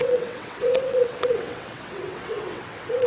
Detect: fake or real fake